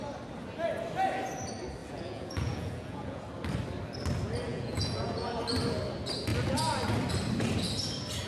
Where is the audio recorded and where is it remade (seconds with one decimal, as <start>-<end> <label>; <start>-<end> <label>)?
0.0-1.8 recorded; 1.8-3.2 remade; 3.2-4.5 recorded; 4.5-5.4 remade; 5.4-8.3 recorded